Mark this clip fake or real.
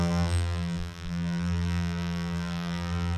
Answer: fake